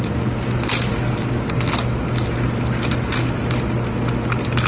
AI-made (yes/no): no